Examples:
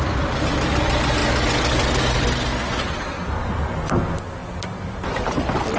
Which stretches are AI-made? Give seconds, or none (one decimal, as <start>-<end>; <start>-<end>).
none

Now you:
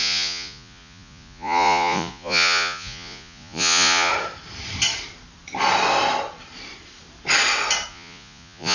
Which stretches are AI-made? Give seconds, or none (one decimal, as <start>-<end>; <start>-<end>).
0.0-4.1; 7.9-8.7

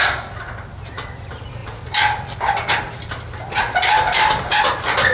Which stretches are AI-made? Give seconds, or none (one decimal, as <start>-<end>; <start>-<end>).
3.8-4.6

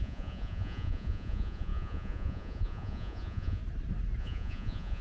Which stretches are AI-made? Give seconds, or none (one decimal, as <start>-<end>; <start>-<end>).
0.0-3.6; 4.2-5.0

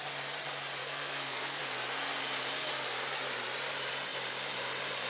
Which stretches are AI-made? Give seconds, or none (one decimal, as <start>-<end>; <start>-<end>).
0.8-1.6